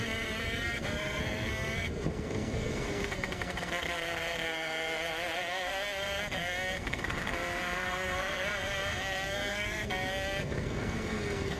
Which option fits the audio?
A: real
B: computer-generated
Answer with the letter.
B